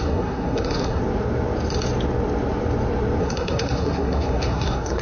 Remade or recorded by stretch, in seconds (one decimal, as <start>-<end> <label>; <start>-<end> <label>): 0.0-1.0 remade; 1.0-3.2 recorded; 3.2-5.0 remade